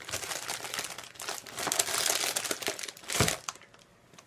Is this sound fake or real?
real